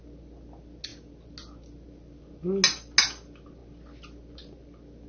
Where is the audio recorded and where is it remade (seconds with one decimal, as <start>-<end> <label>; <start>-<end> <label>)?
0.0-5.1 recorded